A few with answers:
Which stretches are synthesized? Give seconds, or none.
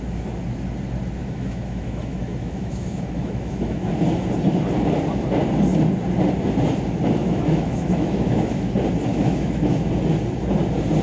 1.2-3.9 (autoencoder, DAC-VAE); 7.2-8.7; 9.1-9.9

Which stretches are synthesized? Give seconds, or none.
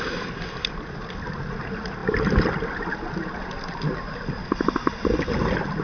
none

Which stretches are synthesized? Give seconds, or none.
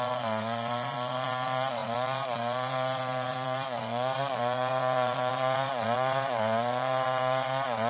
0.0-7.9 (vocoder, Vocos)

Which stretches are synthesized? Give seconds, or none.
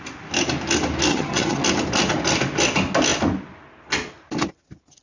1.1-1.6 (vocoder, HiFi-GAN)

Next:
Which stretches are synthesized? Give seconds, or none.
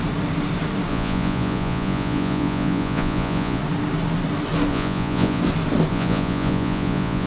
0.9-3.6 (vocoder, Vocos); 4.7-5.4; 5.9-7.3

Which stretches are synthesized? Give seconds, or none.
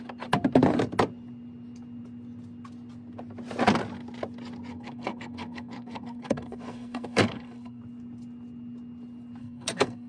4.7-7.8 (codec, SNAC); 9.4-10.1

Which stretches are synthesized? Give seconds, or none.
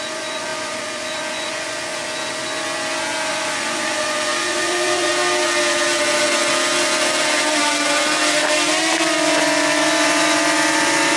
0.0-1.9 (vocoder, Vocos); 3.3-5.1; 9.8-11.2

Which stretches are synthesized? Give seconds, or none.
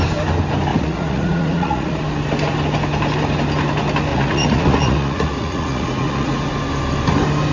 0.7-2.0 (vocoder, Vocos); 4.1-6.4